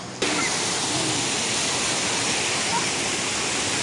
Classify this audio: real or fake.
real